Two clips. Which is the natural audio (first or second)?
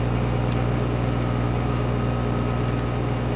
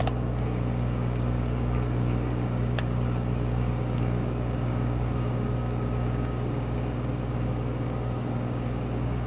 first